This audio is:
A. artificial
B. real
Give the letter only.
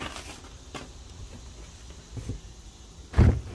B